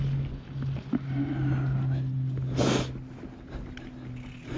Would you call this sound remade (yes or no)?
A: no